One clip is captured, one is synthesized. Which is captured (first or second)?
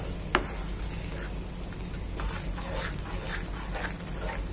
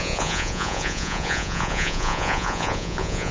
first